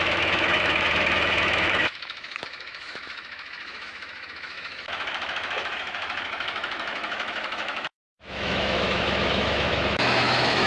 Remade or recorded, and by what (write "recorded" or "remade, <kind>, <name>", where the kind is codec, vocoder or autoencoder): remade, autoencoder, DAC-VAE